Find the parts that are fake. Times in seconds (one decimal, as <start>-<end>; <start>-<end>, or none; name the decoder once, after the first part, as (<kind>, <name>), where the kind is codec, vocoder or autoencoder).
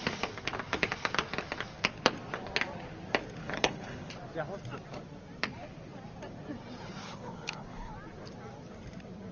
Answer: 3.4-4.1 (codec, HILCodec); 7.0-7.9